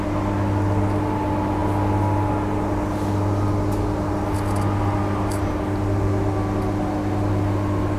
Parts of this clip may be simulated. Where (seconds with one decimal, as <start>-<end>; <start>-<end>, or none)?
none